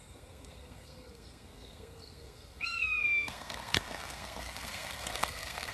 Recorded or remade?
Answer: remade